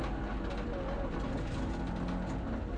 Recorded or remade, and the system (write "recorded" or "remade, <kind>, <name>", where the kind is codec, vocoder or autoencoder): recorded